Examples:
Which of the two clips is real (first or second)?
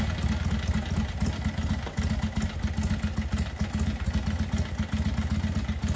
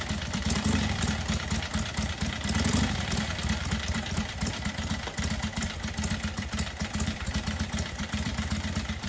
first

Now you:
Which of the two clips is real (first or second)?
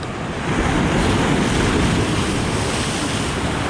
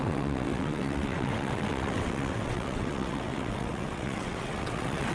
first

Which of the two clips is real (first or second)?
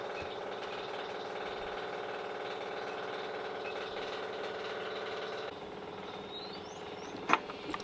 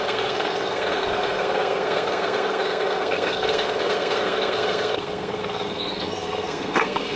first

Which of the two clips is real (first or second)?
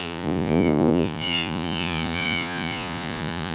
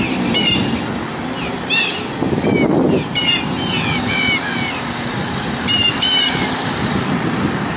second